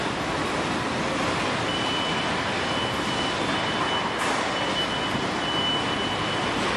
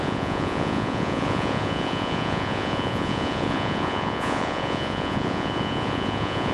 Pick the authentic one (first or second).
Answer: first